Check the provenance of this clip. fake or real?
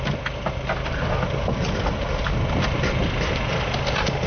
real